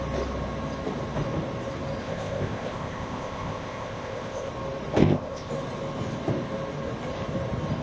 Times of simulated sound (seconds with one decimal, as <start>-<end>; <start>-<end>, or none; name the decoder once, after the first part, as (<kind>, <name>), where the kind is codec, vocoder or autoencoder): 2.0-4.5 (codec, ZipCodec); 5.0-5.5